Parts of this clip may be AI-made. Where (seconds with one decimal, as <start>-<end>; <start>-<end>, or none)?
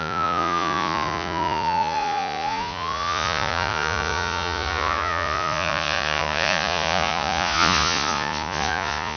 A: 0.0-9.2